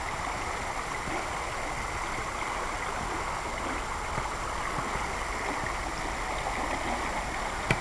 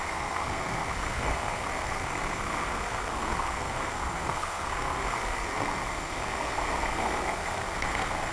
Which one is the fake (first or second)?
second